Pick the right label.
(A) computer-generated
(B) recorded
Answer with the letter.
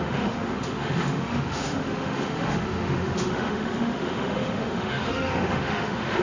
A